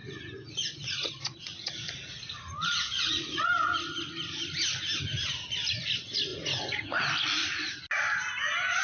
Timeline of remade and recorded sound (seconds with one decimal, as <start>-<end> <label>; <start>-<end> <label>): 0.0-3.5 remade; 3.5-6.3 recorded; 6.3-7.0 remade; 7.0-8.8 recorded